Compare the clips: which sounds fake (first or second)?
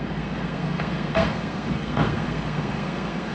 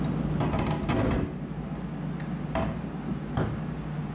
first